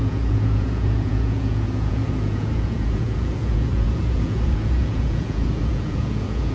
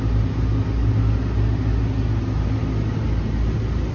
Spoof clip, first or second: first